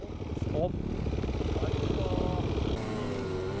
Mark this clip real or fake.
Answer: real